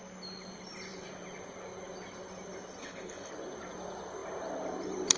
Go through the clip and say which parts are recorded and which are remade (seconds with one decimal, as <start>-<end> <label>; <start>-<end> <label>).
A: 0.0-2.8 recorded; 2.8-3.3 remade; 3.3-5.2 recorded